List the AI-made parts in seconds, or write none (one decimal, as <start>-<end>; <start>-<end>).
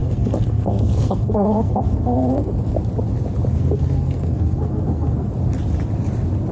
0.0-2.5; 3.5-5.3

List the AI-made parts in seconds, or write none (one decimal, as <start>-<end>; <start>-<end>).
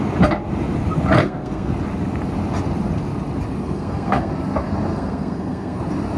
1.2-1.7; 3.6-4.3; 4.9-5.8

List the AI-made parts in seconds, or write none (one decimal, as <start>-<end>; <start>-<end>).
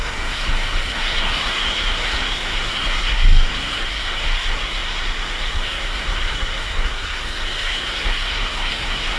0.0-9.2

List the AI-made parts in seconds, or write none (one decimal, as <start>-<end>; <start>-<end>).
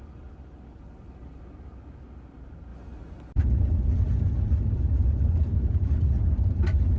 none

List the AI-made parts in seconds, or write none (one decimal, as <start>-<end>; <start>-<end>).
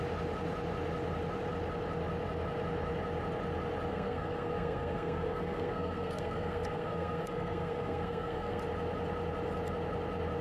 3.9-8.6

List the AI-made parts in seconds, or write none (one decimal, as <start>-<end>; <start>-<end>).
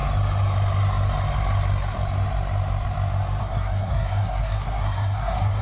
3.4-5.6